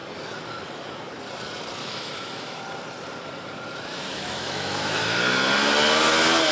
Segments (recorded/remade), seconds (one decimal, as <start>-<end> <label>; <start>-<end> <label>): 0.0-1.8 recorded; 1.8-2.6 remade; 2.6-3.9 recorded; 3.9-5.2 remade; 5.2-6.5 recorded